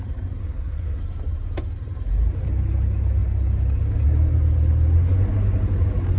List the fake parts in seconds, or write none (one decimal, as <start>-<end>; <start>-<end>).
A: 0.4-1.0